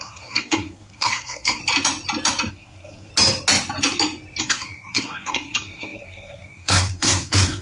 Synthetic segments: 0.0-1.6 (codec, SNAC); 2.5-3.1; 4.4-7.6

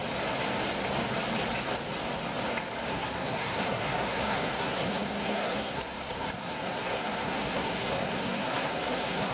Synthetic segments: 2.9-9.3 (codec, SNAC)

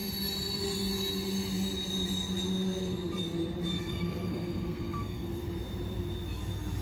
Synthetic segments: 3.8-5.4 (codec, SNAC)

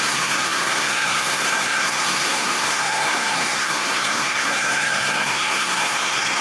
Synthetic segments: 0.0-6.4 (codec, SNAC)

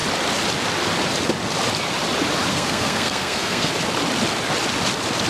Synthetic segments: 2.5-3.7 (codec, SNAC)

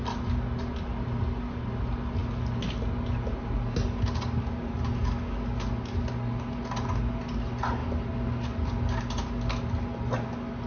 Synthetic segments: none

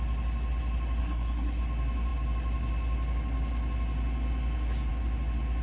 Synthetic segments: 1.0-1.6 (codec, SNAC)